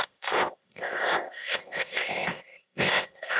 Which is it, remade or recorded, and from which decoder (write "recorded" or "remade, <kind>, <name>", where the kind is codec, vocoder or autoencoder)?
remade, codec, ZipCodec